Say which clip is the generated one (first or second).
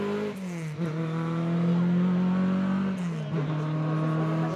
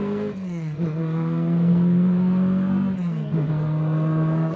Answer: second